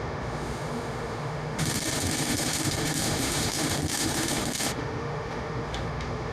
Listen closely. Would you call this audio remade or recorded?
remade